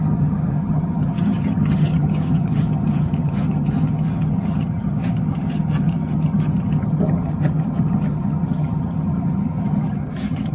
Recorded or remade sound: remade